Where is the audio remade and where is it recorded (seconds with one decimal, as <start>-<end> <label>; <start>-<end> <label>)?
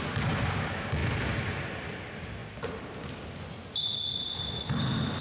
0.0-5.2 recorded